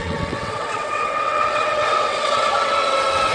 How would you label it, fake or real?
fake